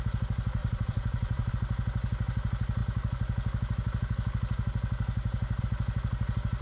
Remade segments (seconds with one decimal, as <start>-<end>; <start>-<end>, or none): 0.6-1.5